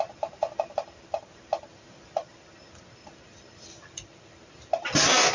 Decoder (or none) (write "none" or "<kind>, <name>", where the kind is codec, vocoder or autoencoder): none